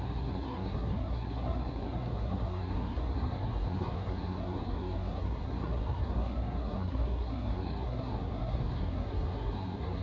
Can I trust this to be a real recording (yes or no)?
no